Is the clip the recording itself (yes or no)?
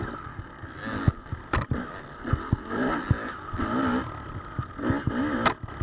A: yes